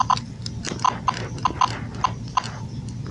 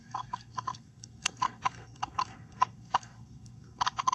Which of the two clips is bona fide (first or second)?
first